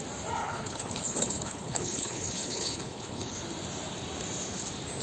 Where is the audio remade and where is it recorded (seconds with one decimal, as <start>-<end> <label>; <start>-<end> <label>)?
0.0-0.4 recorded; 0.4-3.4 remade; 3.4-5.0 recorded